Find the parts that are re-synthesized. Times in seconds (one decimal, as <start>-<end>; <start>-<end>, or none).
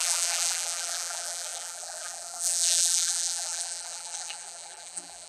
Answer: 0.0-5.3